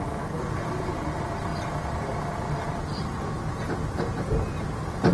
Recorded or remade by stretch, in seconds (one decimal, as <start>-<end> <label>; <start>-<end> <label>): 0.0-5.1 recorded